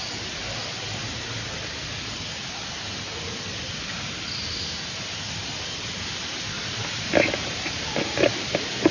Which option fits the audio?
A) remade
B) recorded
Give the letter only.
B